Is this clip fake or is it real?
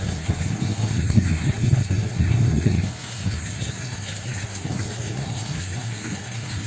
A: fake